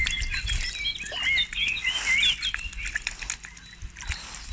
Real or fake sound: real